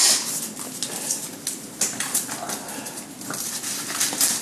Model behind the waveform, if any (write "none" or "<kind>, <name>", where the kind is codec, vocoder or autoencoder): none